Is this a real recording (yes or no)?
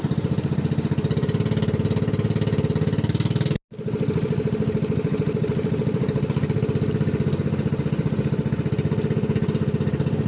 yes